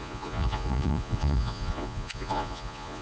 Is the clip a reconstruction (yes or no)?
yes